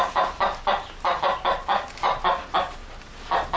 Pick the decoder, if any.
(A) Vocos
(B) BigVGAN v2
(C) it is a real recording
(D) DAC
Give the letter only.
C